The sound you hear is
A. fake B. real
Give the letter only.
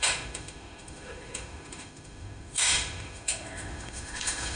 A